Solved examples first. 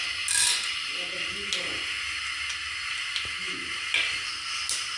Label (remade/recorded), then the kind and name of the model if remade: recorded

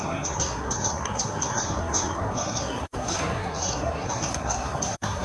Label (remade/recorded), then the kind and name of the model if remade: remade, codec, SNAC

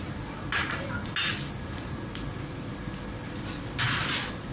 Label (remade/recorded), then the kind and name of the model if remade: recorded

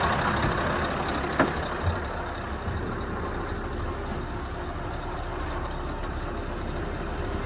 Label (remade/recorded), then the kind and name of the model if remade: recorded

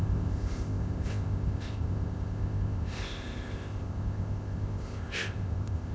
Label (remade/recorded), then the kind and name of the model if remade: remade, codec, ZipCodec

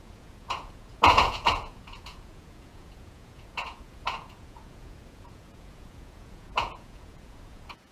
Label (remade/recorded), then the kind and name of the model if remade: remade, vocoder, Vocos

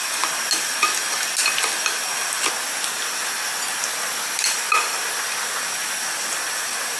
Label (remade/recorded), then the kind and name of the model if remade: recorded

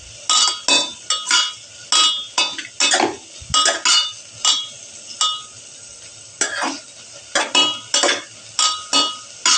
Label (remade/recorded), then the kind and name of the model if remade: recorded